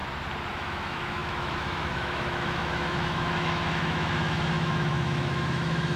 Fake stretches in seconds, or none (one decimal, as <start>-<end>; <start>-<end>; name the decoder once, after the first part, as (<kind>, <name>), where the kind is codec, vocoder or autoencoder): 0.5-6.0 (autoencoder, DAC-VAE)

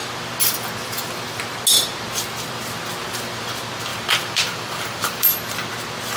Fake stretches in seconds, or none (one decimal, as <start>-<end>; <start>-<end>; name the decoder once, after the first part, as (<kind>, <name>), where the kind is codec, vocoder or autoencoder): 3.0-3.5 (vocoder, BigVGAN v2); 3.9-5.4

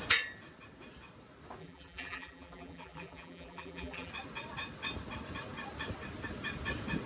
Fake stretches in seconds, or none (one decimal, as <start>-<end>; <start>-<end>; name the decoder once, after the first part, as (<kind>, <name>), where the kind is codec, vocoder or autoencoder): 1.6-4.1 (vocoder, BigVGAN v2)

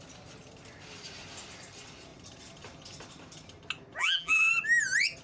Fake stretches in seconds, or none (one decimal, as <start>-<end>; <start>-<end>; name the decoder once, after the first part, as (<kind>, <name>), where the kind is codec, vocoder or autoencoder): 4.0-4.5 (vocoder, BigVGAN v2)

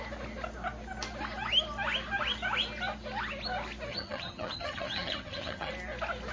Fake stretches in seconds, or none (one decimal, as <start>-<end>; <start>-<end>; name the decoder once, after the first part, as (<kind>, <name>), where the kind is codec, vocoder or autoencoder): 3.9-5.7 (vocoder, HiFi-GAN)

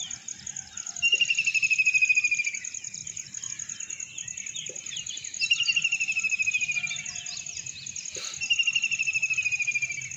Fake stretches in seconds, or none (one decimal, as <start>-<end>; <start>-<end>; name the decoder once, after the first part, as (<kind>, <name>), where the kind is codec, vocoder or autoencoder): none

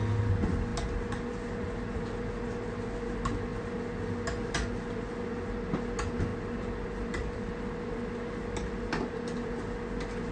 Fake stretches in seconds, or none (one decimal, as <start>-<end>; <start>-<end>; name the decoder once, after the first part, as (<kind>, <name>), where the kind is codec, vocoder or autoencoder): 6.3-7.5 (vocoder, BigVGAN v2)

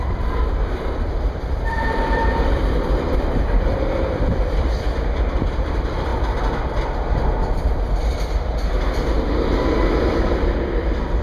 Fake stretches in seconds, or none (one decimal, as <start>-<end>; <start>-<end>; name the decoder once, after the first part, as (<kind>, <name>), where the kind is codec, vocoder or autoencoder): 0.0-6.1 (vocoder, BigVGAN v2); 10.0-11.2